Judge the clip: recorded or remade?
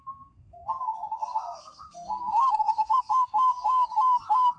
remade